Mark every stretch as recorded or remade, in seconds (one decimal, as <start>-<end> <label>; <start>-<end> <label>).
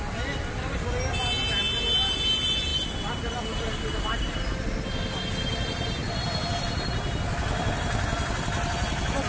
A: 0.0-9.3 recorded